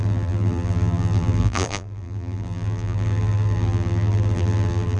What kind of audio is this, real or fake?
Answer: fake